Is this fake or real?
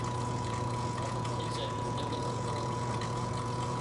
fake